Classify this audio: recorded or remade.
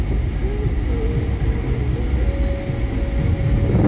recorded